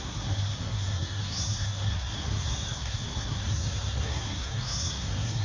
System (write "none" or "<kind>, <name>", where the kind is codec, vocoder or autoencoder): codec, SNAC